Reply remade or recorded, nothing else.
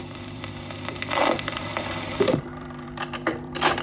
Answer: remade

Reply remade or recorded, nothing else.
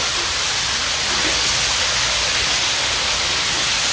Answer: recorded